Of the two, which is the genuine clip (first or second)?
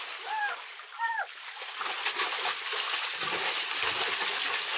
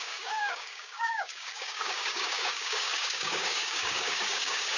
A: first